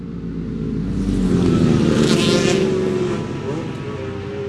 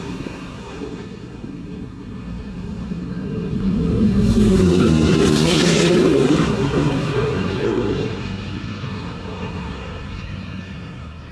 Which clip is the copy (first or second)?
second